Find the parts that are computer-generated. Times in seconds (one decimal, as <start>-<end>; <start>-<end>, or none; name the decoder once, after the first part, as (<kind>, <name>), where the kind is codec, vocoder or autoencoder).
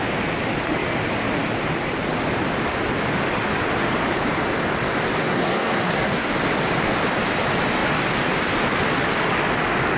5.2-6.3 (codec, SNAC)